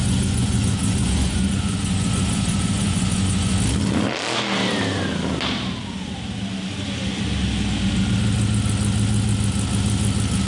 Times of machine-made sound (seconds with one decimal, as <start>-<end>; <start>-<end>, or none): 0.0-3.5